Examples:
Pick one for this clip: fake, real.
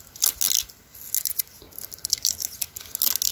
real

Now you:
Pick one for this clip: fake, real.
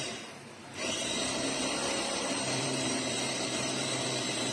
fake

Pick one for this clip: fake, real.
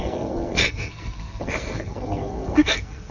fake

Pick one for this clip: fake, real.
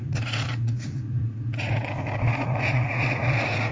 fake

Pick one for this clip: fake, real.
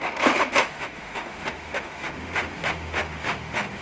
fake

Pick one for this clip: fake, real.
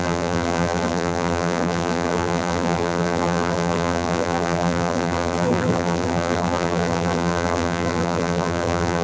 fake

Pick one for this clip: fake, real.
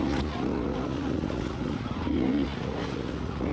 fake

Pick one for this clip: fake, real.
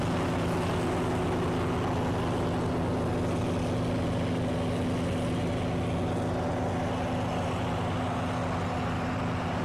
real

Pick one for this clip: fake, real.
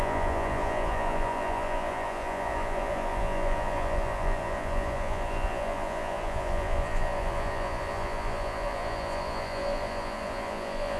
fake